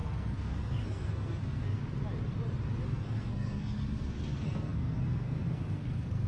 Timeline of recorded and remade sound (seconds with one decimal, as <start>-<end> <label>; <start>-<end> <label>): 0.0-1.8 remade; 1.8-2.9 recorded; 2.9-6.3 remade